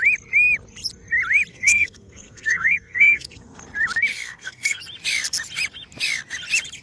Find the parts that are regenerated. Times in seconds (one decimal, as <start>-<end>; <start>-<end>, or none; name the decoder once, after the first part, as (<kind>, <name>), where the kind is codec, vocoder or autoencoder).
1.5-3.6 (codec, SNAC); 4.1-4.8